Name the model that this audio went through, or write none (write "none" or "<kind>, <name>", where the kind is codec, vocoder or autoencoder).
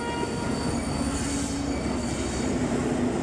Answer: none